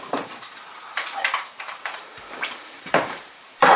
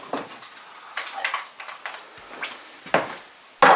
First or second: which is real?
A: second